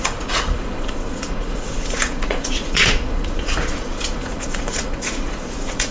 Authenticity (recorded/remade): remade